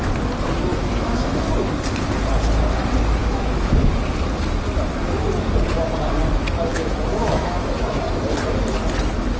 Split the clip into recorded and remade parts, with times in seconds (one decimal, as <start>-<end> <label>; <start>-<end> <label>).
0.0-0.7 recorded; 0.7-1.5 remade; 1.5-3.2 recorded; 3.2-3.9 remade; 3.9-6.7 recorded; 6.7-8.0 remade; 8.0-9.4 recorded